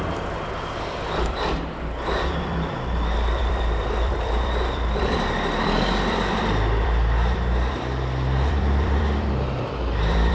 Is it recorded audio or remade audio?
remade